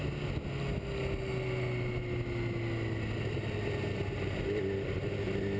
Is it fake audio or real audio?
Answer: real